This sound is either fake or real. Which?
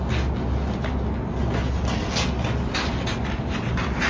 real